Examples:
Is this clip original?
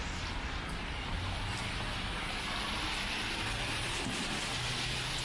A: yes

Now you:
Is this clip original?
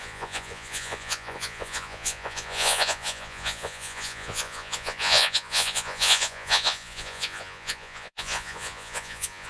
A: no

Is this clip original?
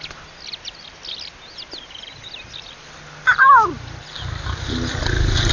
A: yes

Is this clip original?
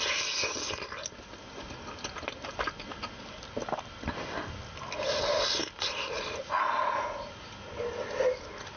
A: yes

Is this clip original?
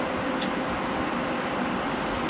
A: yes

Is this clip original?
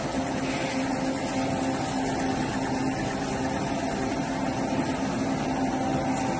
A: yes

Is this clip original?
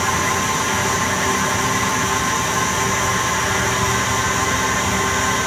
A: yes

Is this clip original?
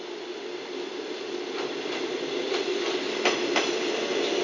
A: yes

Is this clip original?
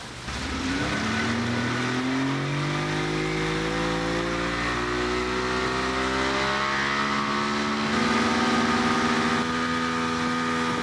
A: yes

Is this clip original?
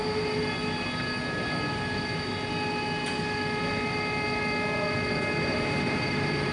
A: no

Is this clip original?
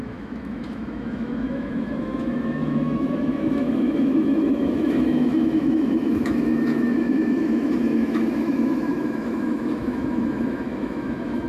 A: no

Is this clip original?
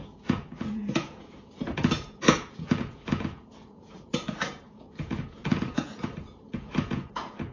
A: no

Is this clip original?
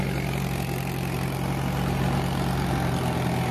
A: yes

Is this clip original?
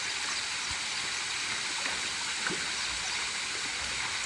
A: yes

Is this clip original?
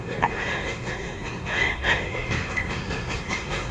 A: no